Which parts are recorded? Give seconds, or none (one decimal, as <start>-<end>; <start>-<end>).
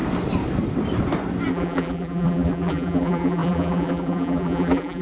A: 0.0-1.5